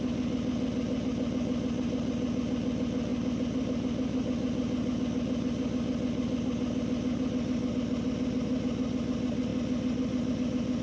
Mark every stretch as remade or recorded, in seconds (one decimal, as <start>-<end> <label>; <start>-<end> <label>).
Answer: 0.0-10.8 recorded